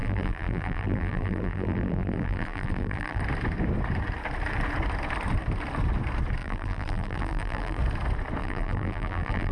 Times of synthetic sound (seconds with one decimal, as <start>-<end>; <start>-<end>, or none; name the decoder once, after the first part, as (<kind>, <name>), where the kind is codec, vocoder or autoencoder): 0.0-3.2 (vocoder, BigVGAN v2); 6.4-7.8; 8.4-9.5